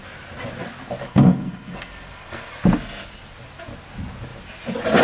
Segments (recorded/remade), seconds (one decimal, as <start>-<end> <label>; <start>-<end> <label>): 0.0-1.0 recorded; 1.0-2.5 remade; 2.5-5.0 recorded